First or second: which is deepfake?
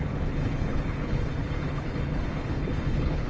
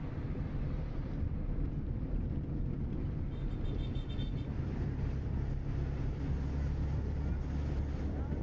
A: first